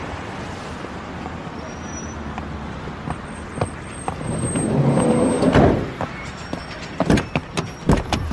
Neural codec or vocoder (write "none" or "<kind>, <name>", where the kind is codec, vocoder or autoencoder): none